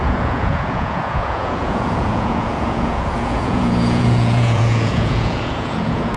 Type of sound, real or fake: fake